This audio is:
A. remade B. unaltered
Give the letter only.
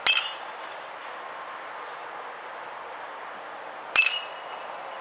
B